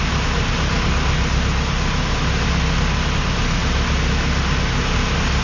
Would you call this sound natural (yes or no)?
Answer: yes